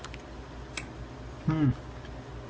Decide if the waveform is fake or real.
real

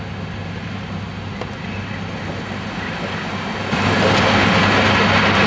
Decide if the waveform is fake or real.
real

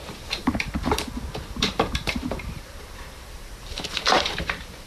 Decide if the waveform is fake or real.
fake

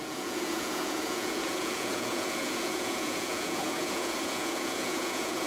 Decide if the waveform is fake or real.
fake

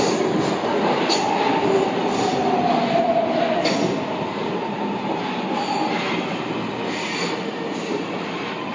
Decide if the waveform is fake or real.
real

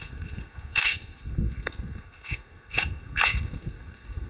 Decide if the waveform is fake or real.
fake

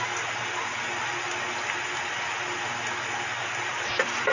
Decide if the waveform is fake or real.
real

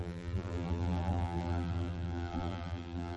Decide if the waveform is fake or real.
fake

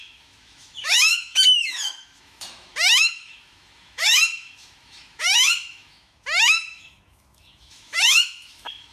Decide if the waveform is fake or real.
fake